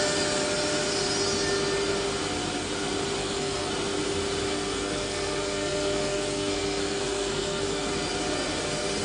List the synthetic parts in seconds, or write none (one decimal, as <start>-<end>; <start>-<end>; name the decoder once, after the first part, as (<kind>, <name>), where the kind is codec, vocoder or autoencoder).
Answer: 3.2-3.7 (codec, SNAC); 4.5-7.9